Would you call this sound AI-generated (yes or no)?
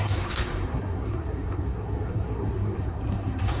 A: yes